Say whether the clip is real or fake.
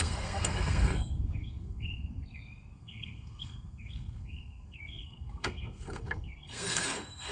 fake